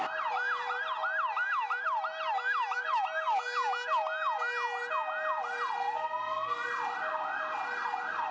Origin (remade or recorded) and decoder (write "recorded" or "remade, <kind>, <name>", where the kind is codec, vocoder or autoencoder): recorded